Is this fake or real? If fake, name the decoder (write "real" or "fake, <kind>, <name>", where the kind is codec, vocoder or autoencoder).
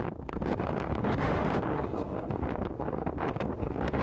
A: fake, autoencoder, DAC-VAE